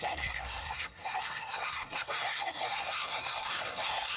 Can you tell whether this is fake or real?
fake